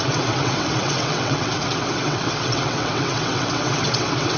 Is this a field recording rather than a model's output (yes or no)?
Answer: no